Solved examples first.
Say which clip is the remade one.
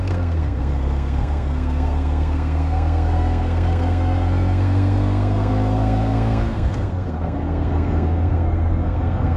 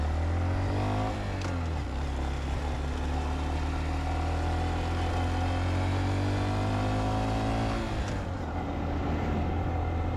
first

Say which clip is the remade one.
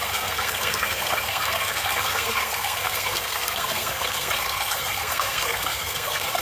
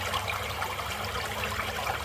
first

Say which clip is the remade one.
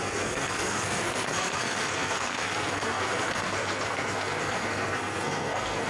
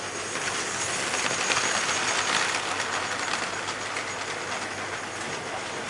first